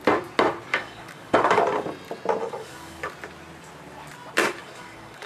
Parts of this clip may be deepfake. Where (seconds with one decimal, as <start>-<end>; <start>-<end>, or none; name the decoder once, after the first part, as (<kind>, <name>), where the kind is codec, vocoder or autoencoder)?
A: 0.7-1.6 (codec, DAC); 2.4-3.0; 4.6-5.3